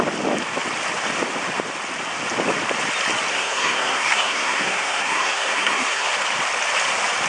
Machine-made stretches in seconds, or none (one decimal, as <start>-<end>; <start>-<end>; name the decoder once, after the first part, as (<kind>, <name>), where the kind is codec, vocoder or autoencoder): 3.3-6.1 (codec, SNAC)